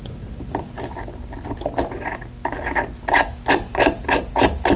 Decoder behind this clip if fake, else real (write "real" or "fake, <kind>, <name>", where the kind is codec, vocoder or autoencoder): real